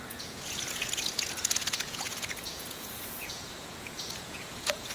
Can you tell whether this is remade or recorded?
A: remade